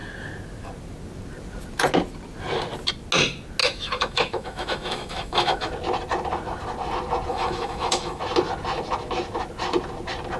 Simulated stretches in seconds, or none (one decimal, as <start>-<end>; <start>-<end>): 3.6-5.7; 7.3-8.2